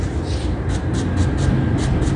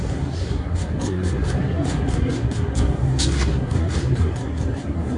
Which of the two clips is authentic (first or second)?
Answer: first